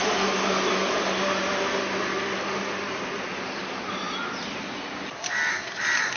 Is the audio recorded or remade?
recorded